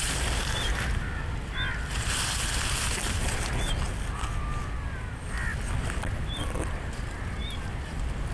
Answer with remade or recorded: recorded